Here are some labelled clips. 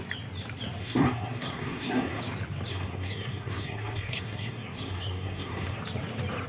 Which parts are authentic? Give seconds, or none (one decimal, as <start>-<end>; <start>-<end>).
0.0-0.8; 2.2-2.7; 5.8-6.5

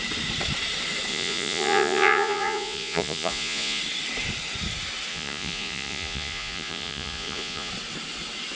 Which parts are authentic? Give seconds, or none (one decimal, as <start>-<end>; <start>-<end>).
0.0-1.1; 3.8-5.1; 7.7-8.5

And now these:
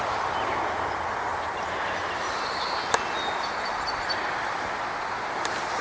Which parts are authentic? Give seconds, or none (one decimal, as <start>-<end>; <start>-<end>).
0.0-5.8